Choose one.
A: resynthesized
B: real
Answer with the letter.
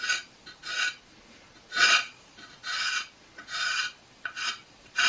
A